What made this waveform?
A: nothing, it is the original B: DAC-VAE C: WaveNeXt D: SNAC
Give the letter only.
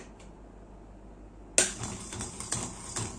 A